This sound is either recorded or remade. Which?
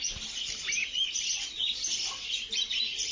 recorded